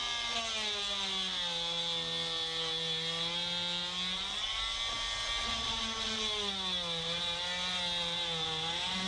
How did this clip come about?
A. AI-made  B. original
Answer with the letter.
B